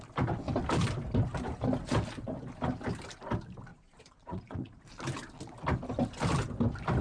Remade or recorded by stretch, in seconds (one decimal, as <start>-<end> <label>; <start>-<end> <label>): 0.0-3.7 recorded; 3.7-4.8 remade; 4.8-7.0 recorded